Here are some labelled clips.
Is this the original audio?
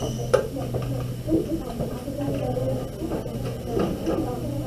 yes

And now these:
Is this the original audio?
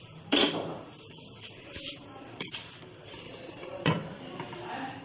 no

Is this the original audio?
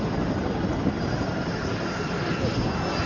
yes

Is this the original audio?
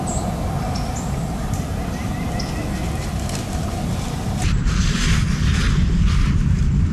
yes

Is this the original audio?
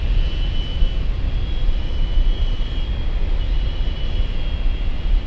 yes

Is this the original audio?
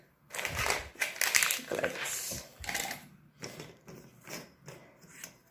yes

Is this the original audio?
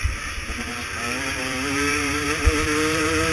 no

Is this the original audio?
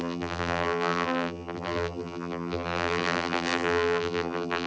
no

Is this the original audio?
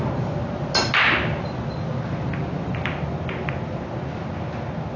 yes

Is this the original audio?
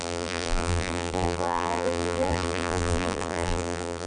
no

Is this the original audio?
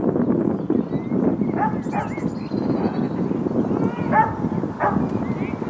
yes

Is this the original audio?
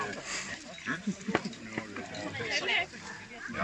no